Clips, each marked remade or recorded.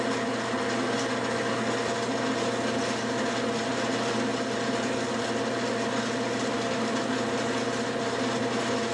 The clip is recorded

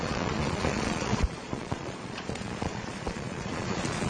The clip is remade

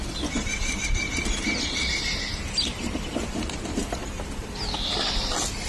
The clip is remade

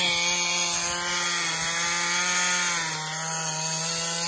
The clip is recorded